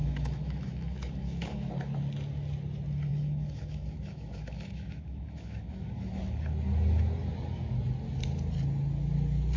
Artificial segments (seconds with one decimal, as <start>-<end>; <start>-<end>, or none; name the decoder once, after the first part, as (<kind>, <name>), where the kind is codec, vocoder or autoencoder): 0.0-1.7 (autoencoder, DAC-VAE); 3.1-6.2